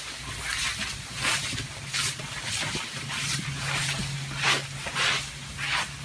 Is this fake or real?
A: real